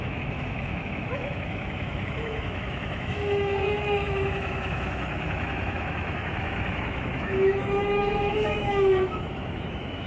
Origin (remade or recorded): remade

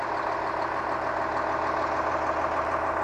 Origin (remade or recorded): recorded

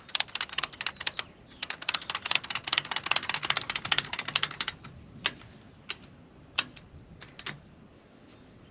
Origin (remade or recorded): recorded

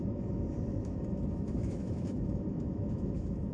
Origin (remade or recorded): remade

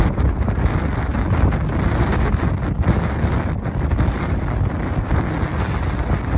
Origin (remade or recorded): recorded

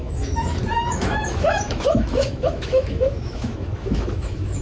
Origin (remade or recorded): remade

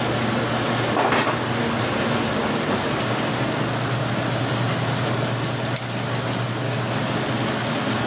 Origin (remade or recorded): recorded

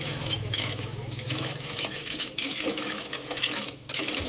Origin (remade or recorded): remade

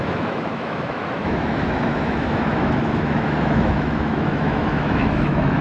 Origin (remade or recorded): remade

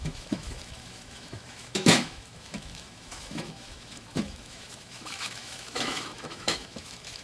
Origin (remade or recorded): remade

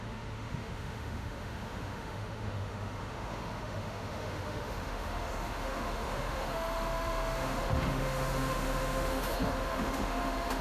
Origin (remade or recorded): remade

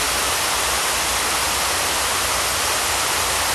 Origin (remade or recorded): recorded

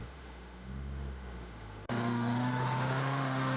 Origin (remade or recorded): remade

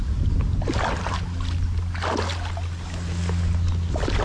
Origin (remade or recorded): recorded